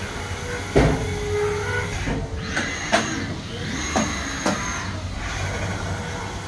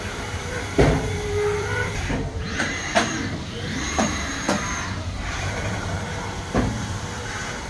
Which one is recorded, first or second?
first